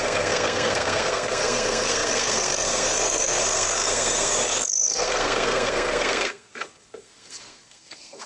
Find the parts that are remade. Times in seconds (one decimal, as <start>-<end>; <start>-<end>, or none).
0.0-8.3